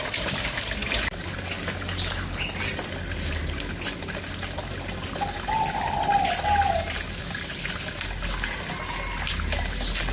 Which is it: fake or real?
real